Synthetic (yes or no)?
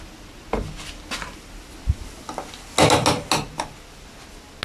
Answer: no